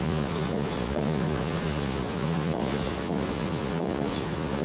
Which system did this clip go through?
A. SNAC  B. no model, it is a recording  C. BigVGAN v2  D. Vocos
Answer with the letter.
D